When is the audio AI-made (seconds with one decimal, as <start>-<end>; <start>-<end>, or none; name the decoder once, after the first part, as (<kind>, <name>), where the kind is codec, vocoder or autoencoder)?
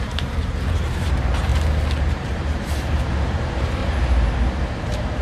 0.0-1.5 (vocoder, BigVGAN v2); 2.1-3.8; 4.7-5.2